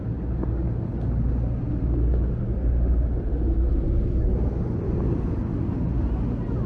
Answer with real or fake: real